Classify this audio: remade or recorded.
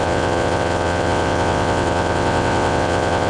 remade